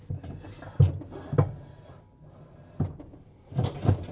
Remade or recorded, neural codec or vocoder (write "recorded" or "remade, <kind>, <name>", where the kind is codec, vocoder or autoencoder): recorded